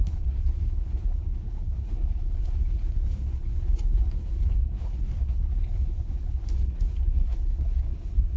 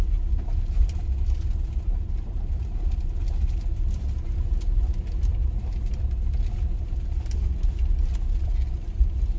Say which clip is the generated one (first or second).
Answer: first